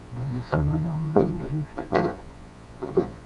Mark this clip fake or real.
fake